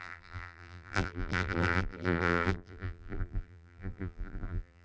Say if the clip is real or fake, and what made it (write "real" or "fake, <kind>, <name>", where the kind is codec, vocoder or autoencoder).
fake, vocoder, BigVGAN v2